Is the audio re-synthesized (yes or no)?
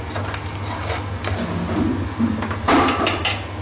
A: no